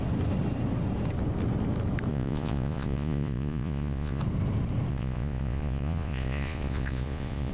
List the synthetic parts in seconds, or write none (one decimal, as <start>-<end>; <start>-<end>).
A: 2.1-4.2; 4.9-7.5